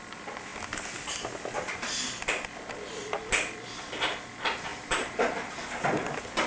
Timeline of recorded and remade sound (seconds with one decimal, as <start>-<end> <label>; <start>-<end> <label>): 0.0-4.7 recorded; 4.7-5.6 remade; 5.6-6.5 recorded